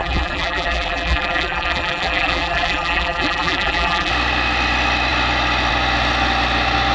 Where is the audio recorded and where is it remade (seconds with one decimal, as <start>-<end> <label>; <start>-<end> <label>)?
0.0-4.1 remade; 4.1-6.9 recorded